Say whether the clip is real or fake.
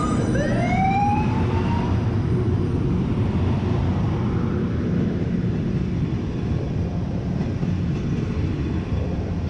fake